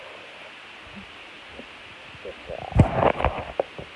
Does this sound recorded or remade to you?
recorded